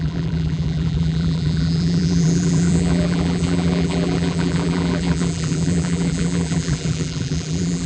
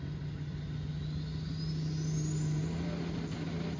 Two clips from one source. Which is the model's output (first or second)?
first